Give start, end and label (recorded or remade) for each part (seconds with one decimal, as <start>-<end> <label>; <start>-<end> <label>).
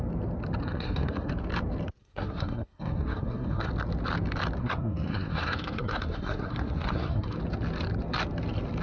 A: 0.0-0.6 recorded; 0.6-1.3 remade; 1.3-2.0 recorded; 2.0-3.7 remade; 3.7-4.6 recorded; 4.6-7.4 remade; 7.4-8.8 recorded